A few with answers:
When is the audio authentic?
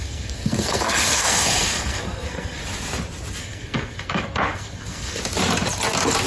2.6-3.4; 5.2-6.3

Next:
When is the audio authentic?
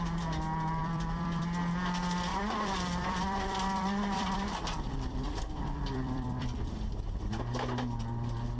0.0-0.8; 1.4-2.3; 7.3-8.6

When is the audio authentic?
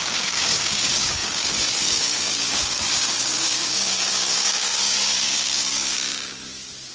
none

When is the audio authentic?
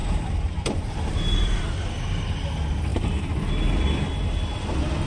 1.6-5.1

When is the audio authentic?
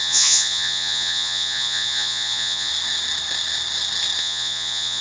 2.7-4.2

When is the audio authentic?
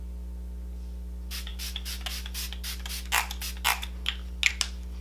0.0-5.0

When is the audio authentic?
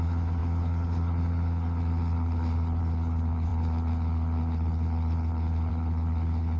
none